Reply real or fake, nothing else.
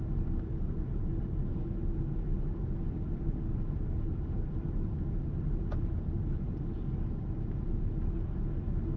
real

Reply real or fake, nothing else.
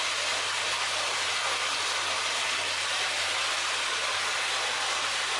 real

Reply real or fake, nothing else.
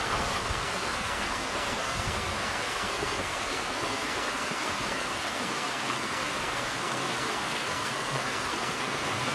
fake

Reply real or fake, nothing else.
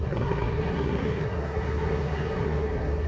fake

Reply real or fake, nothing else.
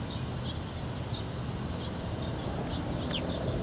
real